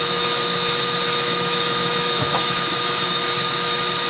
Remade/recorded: remade